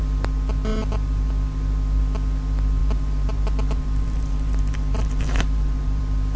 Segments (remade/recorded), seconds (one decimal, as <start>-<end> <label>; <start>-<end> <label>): 0.0-0.7 recorded; 0.7-1.3 remade; 1.3-2.8 recorded; 2.8-6.0 remade; 6.0-6.4 recorded